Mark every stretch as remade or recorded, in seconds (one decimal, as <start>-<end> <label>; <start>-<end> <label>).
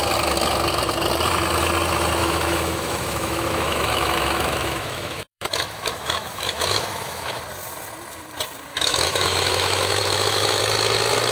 0.0-2.2 recorded; 2.2-7.4 remade; 7.4-8.7 recorded; 8.7-10.6 remade; 10.6-11.3 recorded